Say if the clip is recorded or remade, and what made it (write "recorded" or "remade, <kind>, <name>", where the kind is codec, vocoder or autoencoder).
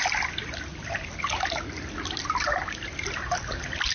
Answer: recorded